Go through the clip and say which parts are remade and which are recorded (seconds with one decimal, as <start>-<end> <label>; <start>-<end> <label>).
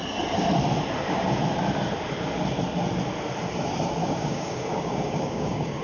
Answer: 0.0-4.0 recorded; 4.0-5.8 remade